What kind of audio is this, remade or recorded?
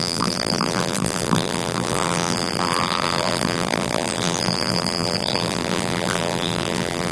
remade